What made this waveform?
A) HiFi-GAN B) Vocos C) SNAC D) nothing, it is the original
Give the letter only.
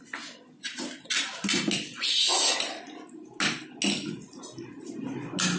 D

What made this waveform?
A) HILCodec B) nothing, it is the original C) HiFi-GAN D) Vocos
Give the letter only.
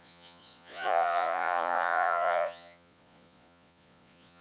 D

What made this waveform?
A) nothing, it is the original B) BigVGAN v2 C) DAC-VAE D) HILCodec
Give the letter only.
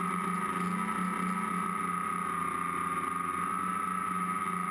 A